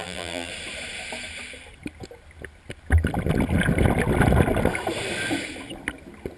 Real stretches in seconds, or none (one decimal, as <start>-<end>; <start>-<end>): 0.5-6.4